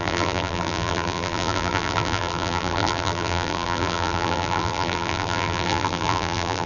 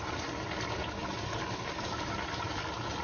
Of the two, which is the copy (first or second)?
first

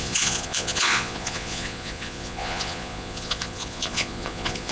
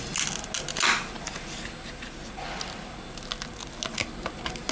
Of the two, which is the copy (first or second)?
first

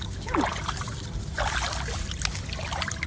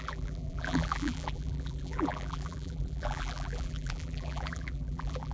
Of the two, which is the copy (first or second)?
second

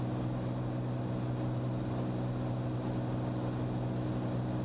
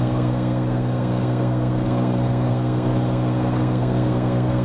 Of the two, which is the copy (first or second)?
second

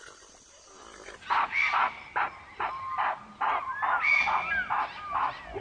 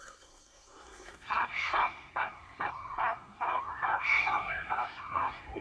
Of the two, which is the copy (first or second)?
second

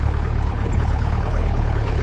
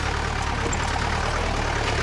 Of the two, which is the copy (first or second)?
first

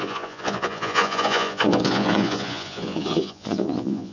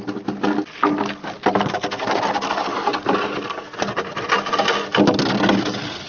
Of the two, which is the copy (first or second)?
first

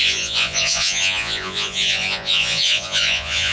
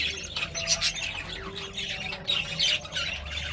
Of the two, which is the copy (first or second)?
first